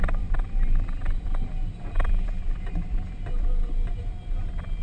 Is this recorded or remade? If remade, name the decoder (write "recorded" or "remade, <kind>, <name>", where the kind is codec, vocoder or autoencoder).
remade, vocoder, BigVGAN v2